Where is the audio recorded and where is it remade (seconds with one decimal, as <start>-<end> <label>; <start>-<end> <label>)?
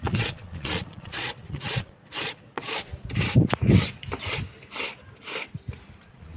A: 0.0-2.9 remade; 2.9-6.0 recorded; 6.0-6.4 remade